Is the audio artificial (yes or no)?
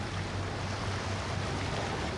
no